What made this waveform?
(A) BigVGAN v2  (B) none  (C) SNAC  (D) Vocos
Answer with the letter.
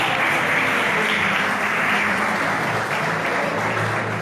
B